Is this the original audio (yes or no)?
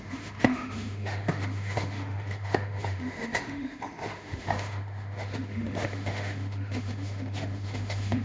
no